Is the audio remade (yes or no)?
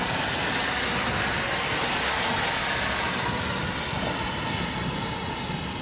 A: no